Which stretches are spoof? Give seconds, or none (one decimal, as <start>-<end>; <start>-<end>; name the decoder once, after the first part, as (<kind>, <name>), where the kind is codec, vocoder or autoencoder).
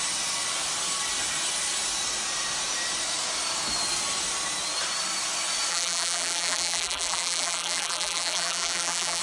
5.7-9.2 (vocoder, BigVGAN v2)